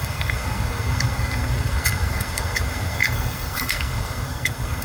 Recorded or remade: remade